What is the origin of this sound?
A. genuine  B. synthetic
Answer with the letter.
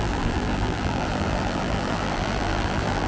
B